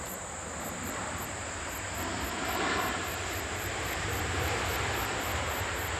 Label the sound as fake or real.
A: fake